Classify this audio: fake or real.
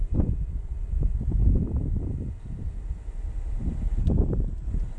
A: real